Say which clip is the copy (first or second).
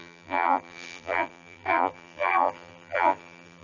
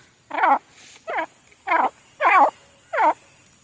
first